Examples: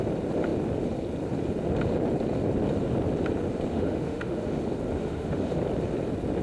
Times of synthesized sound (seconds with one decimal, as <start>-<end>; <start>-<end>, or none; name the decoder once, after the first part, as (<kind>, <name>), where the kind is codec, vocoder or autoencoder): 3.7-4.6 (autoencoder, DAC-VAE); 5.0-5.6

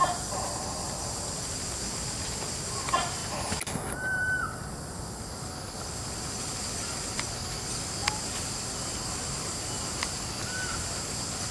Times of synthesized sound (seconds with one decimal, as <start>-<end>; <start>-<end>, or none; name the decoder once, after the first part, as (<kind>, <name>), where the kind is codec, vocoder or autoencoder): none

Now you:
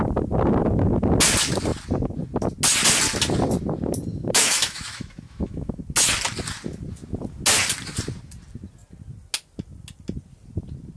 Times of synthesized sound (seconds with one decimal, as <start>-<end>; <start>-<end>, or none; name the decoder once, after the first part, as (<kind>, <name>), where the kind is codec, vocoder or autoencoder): 4.1-5.8 (autoencoder, DAC-VAE)

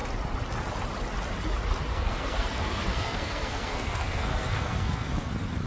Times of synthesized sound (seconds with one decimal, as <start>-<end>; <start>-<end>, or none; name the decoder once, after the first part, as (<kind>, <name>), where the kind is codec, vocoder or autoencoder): 1.9-5.3 (codec, SNAC)